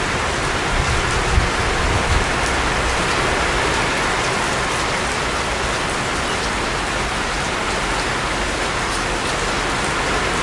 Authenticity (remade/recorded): recorded